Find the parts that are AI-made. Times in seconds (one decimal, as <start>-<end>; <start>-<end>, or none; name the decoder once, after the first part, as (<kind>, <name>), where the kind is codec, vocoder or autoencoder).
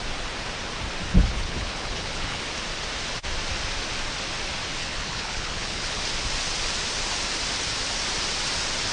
1.1-2.4 (codec, HILCodec); 4.8-6.0